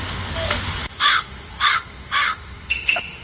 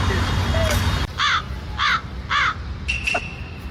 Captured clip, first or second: second